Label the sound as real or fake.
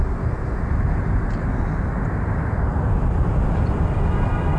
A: real